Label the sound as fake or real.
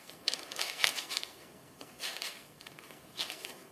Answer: fake